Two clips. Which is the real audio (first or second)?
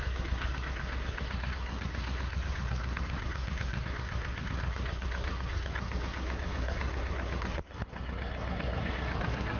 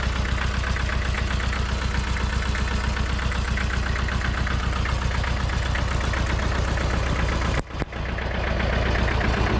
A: second